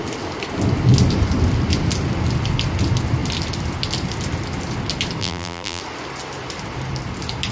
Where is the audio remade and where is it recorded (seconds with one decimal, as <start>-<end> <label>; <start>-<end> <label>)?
0.0-5.2 recorded; 5.2-5.8 remade; 5.8-7.5 recorded